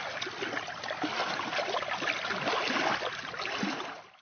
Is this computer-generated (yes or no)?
no